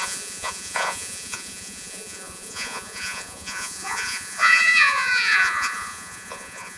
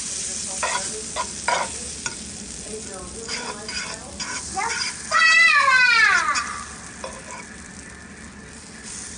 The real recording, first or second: second